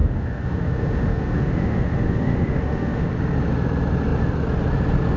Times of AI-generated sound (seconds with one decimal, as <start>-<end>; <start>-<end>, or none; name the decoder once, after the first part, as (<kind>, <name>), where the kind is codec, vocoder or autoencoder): 0.0-3.1 (autoencoder, DAC-VAE)